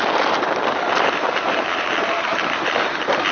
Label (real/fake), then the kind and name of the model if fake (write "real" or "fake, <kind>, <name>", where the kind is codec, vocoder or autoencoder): fake, vocoder, BigVGAN v2